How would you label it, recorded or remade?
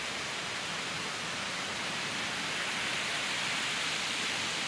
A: recorded